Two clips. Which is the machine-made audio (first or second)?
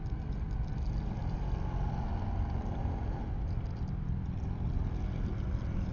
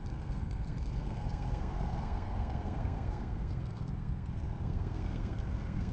second